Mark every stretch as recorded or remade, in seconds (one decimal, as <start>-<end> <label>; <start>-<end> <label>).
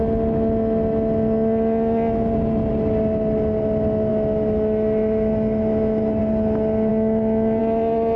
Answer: 0.0-4.1 recorded; 4.1-6.2 remade; 6.2-6.9 recorded; 6.9-7.6 remade; 7.6-8.2 recorded